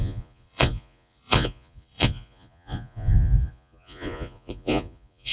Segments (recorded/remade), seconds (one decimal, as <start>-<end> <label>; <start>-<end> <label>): 0.0-5.3 remade